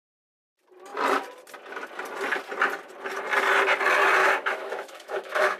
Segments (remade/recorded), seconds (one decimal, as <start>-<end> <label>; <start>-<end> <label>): 0.0-4.2 recorded; 4.2-5.6 remade